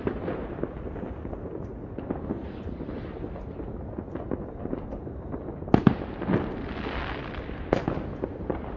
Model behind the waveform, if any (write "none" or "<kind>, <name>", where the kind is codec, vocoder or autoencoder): none